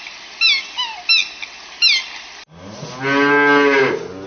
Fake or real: real